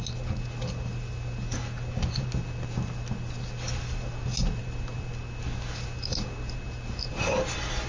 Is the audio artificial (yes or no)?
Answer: no